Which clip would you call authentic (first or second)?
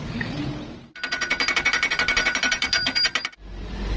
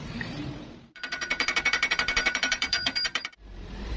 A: first